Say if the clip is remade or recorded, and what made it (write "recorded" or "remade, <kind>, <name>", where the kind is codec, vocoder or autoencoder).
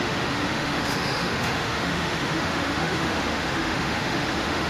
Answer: remade, autoencoder, DAC-VAE